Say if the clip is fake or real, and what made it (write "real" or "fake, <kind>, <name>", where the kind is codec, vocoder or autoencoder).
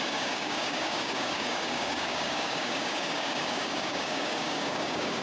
fake, codec, DAC